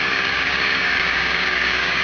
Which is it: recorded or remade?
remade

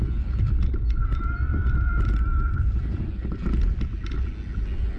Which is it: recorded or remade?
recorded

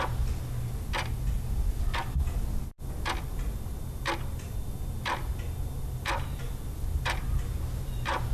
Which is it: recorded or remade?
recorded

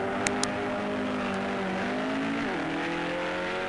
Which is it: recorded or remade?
recorded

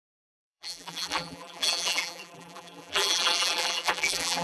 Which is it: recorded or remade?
remade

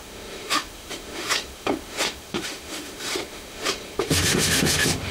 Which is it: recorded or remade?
remade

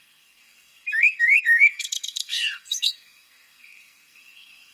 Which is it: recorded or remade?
remade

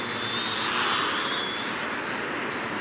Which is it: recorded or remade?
recorded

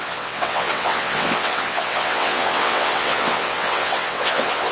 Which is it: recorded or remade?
remade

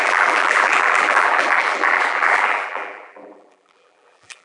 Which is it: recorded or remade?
remade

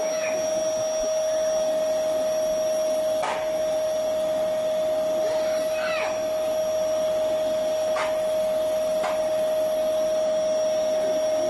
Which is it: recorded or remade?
recorded